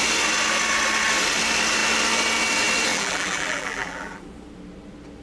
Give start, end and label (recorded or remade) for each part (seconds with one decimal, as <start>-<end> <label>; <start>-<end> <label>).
0.0-2.9 recorded; 2.9-4.2 remade; 4.2-5.2 recorded